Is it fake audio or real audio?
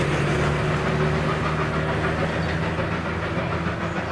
real